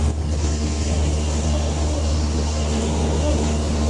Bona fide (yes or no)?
no